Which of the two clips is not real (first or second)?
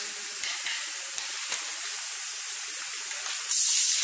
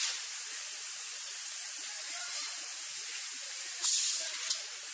second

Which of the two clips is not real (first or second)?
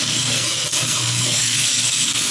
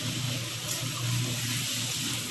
first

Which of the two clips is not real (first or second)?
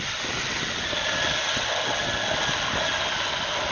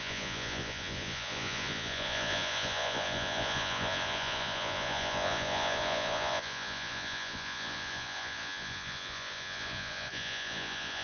second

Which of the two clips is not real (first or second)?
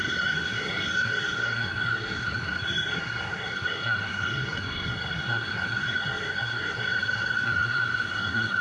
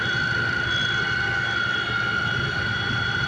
first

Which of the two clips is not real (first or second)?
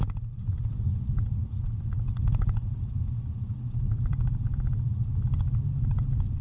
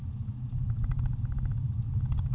first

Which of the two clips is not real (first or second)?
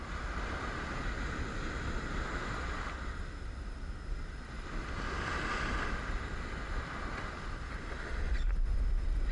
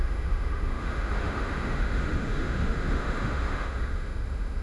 second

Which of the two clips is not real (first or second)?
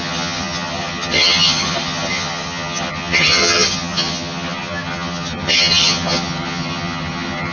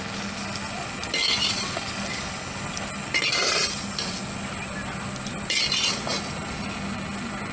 first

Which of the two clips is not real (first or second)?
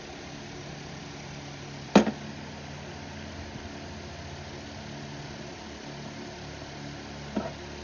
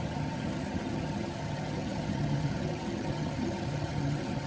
second